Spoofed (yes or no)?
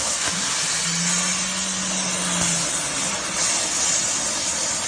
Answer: no